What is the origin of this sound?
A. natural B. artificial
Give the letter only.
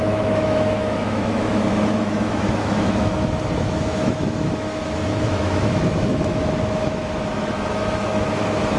B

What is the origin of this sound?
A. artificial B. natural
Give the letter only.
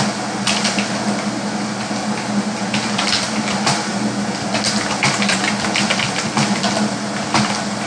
B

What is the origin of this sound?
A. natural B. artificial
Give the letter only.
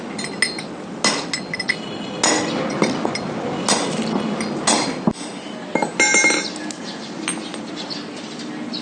A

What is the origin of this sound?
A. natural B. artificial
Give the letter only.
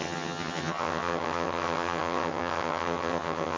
B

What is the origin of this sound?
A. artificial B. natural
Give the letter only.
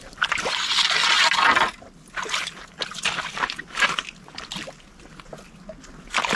B